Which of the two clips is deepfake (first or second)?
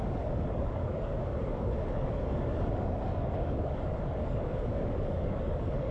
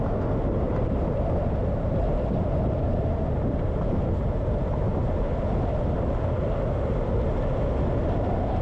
first